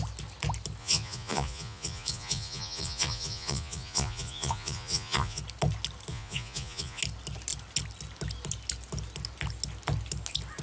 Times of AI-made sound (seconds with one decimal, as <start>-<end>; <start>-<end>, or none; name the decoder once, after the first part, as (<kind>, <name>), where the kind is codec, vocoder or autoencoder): 0.8-5.4 (vocoder, Vocos); 6.1-7.0

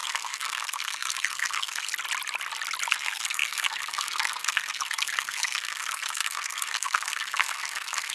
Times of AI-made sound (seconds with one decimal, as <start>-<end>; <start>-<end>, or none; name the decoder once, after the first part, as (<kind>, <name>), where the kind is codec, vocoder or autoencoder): 0.0-1.9 (codec, SNAC); 2.9-8.1

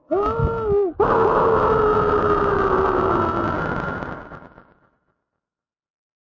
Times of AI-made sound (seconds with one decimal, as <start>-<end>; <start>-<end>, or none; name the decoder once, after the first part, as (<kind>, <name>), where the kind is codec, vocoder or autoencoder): none